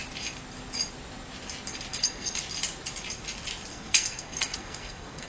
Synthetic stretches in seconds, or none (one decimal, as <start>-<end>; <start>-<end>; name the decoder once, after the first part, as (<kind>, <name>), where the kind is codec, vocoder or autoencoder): 1.9-2.4 (codec, SNAC); 3.7-5.3